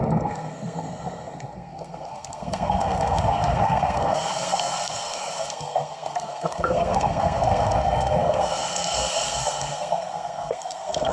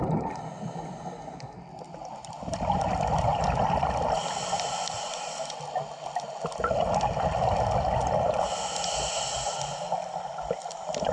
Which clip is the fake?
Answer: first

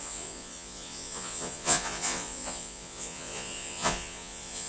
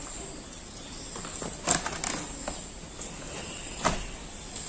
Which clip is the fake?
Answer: first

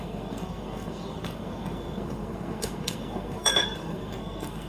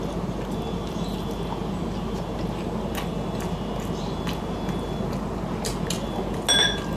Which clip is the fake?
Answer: first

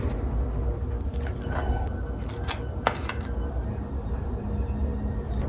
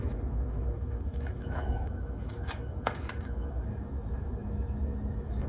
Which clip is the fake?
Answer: second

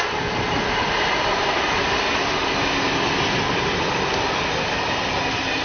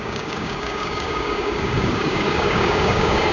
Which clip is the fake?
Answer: second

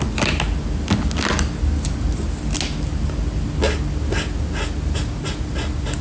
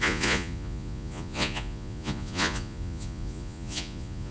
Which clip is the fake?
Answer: second